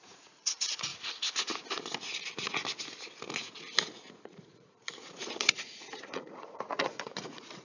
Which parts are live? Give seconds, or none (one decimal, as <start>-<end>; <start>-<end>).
0.9-4.0